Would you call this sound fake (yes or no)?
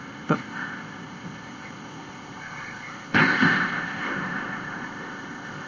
yes